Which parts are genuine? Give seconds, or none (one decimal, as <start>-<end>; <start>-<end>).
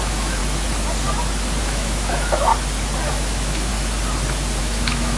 0.4-1.6; 2.5-3.1; 3.7-4.6